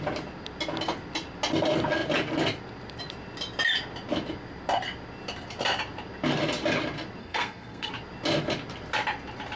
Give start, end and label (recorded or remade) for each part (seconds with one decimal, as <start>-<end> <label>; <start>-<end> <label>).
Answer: 0.0-7.2 recorded; 7.2-7.9 remade; 7.9-9.6 recorded